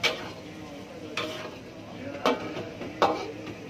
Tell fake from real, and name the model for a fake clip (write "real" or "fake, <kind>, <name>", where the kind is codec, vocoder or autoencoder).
real